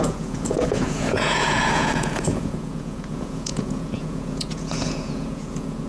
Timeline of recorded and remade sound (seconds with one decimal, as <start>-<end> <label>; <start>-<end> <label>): 0.0-5.9 remade